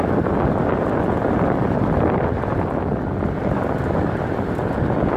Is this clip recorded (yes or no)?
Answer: yes